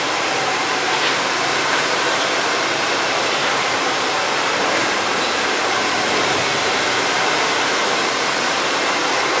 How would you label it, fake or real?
fake